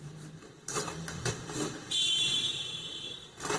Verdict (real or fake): fake